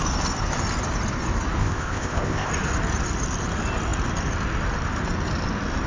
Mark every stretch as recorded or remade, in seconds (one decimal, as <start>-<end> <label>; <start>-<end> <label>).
0.0-1.6 recorded; 1.6-2.5 remade; 2.5-5.9 recorded